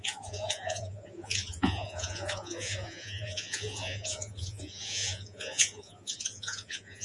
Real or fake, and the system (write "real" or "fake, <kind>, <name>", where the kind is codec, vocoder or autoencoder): fake, vocoder, Vocos